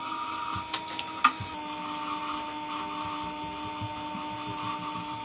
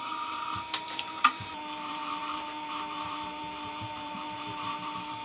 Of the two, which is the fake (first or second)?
second